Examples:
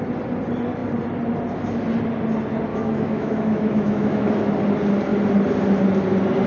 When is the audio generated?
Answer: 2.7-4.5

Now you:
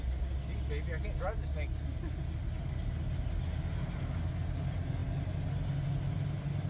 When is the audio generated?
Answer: none

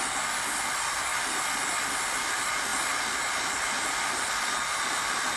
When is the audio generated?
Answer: none

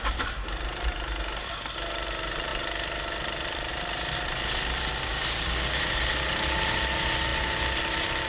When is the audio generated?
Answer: 5.1-5.8

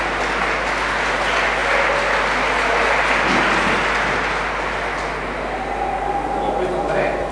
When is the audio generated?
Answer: none

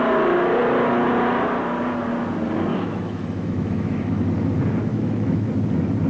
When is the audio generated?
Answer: 2.7-4.3; 4.9-5.5

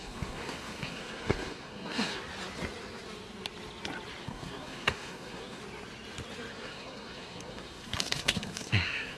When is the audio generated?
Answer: 0.0-2.2; 4.2-5.6; 6.5-9.2

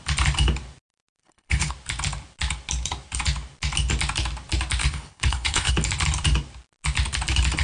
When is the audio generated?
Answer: 1.2-1.7; 4.8-5.7